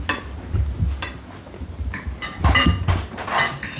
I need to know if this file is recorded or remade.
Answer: recorded